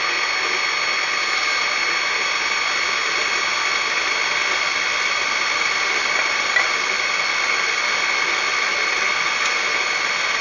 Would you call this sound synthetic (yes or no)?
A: no